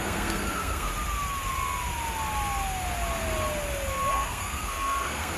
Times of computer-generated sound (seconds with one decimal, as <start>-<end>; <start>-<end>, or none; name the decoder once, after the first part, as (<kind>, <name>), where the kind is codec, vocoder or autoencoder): 0.0-0.9 (codec, SNAC); 4.1-5.4